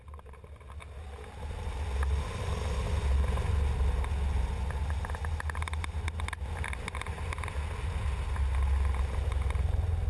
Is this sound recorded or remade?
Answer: recorded